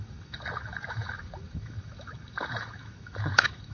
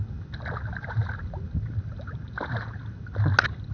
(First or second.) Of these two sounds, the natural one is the second